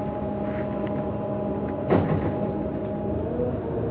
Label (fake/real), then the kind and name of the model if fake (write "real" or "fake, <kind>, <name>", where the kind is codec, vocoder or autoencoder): real